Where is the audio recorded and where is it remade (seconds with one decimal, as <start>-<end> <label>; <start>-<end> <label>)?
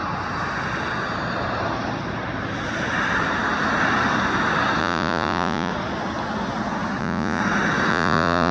0.0-4.8 recorded; 4.8-5.7 remade; 5.7-7.0 recorded; 7.0-7.4 remade; 7.4-7.9 recorded; 7.9-8.5 remade